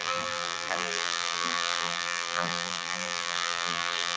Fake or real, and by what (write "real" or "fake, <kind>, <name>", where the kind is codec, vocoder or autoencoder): fake, vocoder, BigVGAN v2